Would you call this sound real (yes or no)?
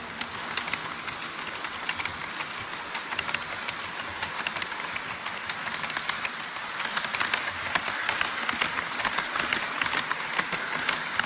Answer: yes